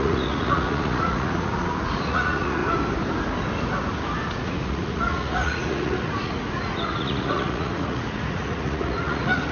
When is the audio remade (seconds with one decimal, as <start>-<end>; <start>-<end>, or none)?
0.0-2.6; 4.3-9.5